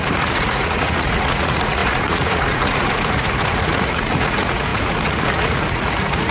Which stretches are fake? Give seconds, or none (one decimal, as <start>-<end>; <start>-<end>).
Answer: 0.0-6.3